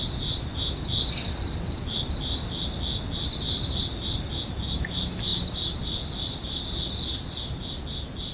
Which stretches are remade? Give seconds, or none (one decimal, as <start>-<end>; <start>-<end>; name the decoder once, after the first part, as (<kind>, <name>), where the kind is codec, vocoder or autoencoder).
none